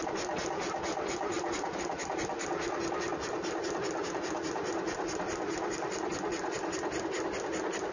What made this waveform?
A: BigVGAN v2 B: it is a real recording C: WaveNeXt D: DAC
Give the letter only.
B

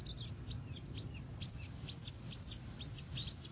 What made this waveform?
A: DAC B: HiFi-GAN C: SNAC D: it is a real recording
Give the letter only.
D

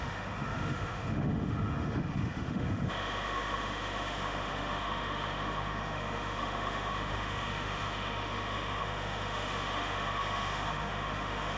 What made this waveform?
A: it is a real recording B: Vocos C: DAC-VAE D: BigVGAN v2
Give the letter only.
C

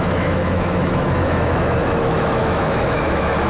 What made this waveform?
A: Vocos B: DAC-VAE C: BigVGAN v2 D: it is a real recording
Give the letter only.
B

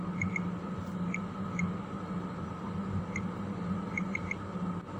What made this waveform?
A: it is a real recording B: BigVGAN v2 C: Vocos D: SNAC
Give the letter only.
A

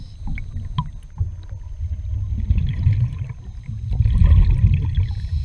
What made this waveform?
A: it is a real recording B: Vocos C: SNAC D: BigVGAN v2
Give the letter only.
A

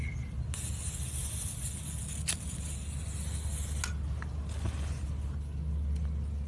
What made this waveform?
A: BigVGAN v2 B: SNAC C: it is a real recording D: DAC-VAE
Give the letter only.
C